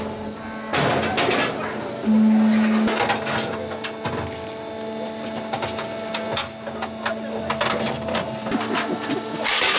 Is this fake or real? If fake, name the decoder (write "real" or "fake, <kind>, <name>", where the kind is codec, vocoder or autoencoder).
real